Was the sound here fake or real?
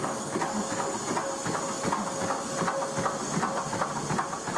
real